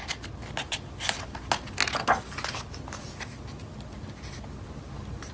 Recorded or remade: recorded